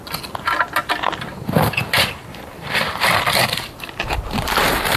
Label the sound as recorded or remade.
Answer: recorded